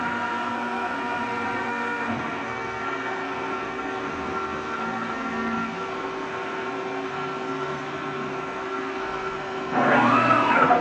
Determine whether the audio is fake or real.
fake